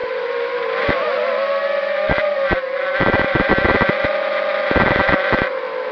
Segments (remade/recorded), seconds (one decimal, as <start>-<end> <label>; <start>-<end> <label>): 0.0-3.5 remade; 3.5-5.9 recorded